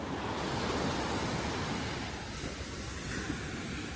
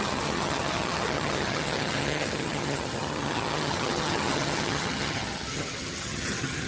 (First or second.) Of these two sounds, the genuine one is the first